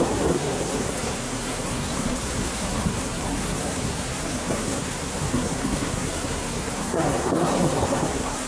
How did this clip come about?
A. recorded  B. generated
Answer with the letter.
B